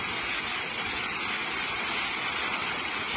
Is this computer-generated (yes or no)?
no